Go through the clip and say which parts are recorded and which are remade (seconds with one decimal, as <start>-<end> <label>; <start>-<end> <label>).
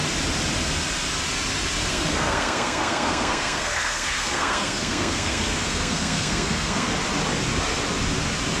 0.0-1.9 recorded; 1.9-6.9 remade; 6.9-8.6 recorded